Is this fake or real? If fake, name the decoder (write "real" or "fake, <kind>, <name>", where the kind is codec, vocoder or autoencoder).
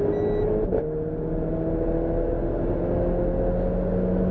real